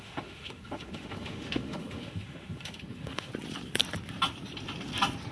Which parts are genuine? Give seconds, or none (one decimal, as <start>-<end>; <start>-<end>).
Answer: 3.3-5.3